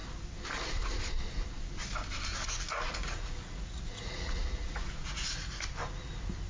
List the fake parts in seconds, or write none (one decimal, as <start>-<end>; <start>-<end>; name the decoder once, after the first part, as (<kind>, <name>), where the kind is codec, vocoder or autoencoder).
2.3-5.6 (vocoder, Vocos)